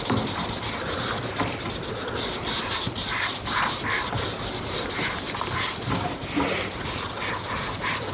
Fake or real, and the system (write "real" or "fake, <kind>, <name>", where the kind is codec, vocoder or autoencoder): real